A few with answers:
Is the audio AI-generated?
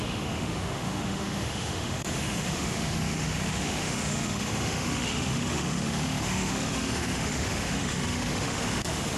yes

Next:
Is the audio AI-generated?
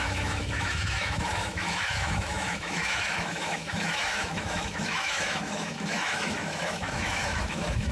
yes